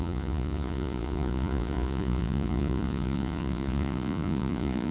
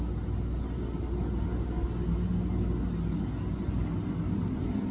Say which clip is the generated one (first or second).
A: first